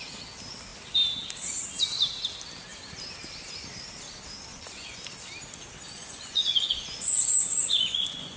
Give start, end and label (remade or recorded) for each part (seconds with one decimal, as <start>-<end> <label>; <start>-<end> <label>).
0.0-4.5 recorded; 4.5-5.0 remade; 5.0-6.0 recorded; 6.0-8.4 remade